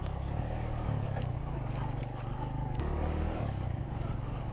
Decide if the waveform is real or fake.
fake